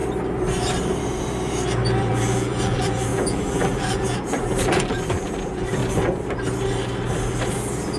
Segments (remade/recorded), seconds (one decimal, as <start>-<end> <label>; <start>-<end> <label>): 0.0-2.0 recorded; 2.0-5.8 remade; 5.8-7.5 recorded; 7.5-8.0 remade